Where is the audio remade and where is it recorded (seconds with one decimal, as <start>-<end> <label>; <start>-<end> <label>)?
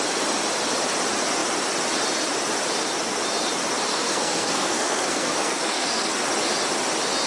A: 0.0-3.9 recorded; 3.9-6.1 remade; 6.1-7.3 recorded